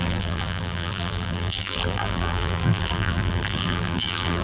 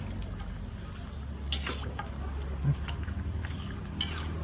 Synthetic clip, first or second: first